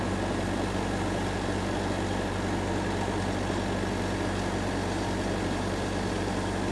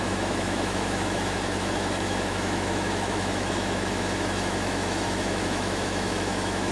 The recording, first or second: first